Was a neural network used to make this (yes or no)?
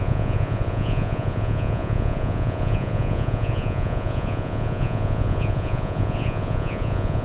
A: yes